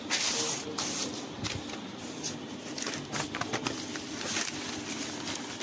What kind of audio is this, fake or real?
real